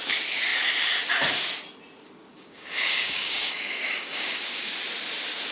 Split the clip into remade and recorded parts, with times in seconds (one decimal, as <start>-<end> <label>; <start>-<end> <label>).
0.0-2.3 recorded; 2.3-4.7 remade; 4.7-5.5 recorded